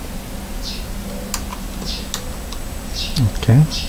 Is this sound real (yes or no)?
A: yes